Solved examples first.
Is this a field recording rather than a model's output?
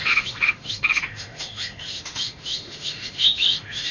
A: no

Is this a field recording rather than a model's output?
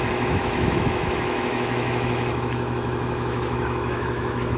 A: no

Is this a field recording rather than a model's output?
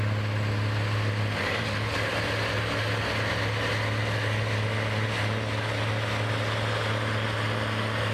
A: yes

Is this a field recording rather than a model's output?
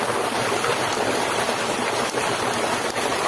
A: yes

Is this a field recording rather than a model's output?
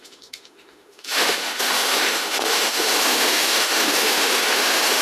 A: no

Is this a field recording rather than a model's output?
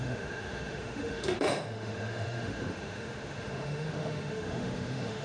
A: no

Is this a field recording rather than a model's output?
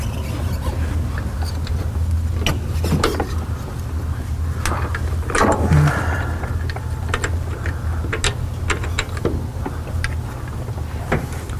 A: yes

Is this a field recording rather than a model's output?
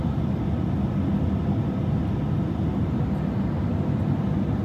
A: yes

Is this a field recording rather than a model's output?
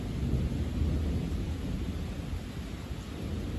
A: yes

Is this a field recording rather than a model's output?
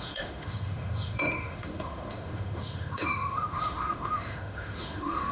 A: no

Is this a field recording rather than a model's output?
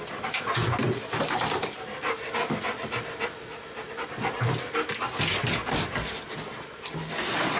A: yes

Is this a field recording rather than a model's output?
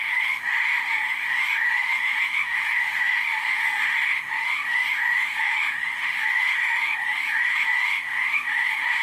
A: no